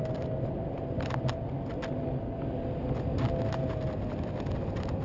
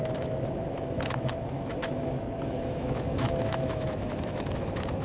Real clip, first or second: first